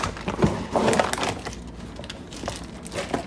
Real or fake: real